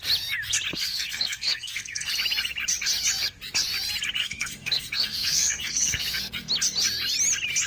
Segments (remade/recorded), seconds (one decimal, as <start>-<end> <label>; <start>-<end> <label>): 0.0-0.7 recorded; 0.7-2.1 remade; 2.1-4.2 recorded; 4.2-6.5 remade; 6.5-7.7 recorded